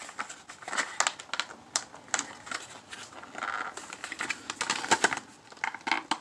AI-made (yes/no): no